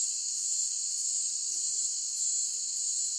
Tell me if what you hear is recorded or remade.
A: recorded